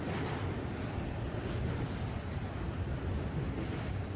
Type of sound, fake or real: real